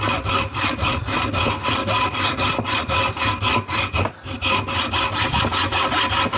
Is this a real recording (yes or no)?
yes